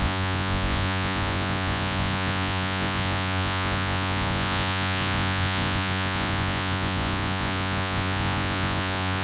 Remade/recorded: remade